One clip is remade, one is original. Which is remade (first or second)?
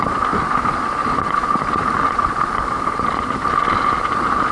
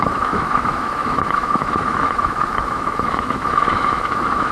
second